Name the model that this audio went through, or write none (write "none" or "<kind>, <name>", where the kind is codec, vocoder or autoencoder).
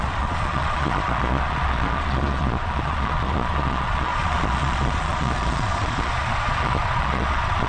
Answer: vocoder, Vocos